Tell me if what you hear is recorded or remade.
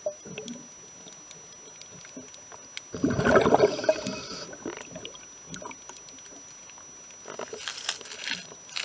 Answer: recorded